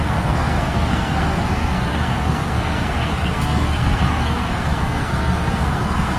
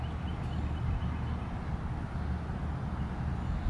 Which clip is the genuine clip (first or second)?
second